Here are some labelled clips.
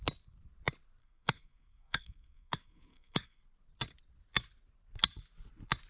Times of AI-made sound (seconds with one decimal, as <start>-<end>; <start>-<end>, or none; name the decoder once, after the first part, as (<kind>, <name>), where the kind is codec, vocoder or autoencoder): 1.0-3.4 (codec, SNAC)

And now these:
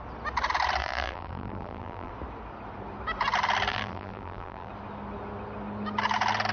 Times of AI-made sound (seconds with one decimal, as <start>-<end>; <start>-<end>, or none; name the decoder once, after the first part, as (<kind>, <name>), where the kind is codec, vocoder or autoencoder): 0.8-2.1 (vocoder, BigVGAN v2); 3.7-4.7

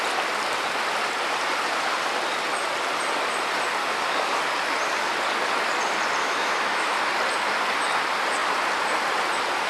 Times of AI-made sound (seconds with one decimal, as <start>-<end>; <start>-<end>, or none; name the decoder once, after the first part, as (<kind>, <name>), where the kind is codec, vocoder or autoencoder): 3.8-4.4 (autoencoder, DAC-VAE); 6.2-7.1

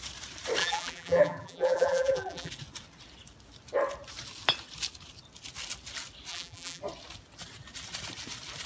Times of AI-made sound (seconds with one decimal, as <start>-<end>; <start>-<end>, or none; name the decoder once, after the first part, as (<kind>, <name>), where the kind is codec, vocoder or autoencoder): 0.6-2.5 (vocoder, BigVGAN v2); 6.3-6.8

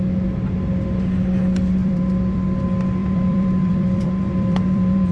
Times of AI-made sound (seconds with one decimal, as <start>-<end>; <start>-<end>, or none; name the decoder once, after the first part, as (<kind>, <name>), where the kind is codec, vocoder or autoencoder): 1.8-2.6 (vocoder, BigVGAN v2); 3.0-5.1

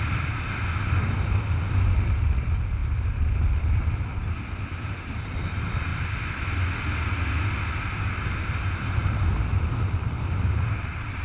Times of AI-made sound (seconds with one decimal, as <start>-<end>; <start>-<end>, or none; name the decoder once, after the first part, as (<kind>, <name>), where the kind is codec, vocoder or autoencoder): none

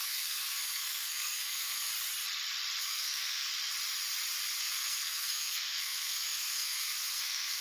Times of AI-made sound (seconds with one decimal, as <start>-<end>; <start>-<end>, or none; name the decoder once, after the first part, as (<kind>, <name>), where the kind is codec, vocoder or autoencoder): 0.0-1.9 (codec, SNAC); 2.8-3.5; 4.6-7.6